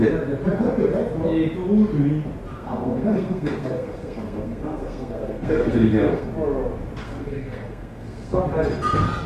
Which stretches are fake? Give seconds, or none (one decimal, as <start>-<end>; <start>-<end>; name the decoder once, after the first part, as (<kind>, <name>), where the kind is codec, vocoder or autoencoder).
2.5-6.3 (codec, SNAC); 7.0-8.4